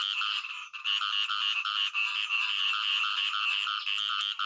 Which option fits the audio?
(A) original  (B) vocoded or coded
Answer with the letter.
A